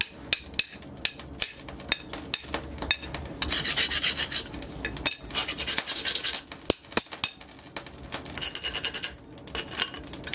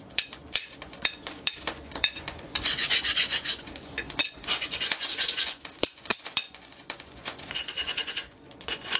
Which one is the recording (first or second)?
first